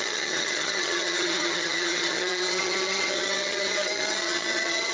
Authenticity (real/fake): fake